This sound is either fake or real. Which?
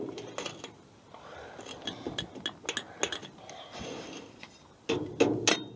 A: real